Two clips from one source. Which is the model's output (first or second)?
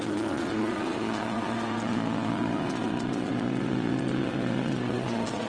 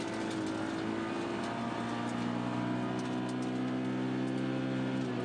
first